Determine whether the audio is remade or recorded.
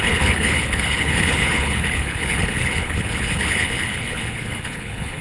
remade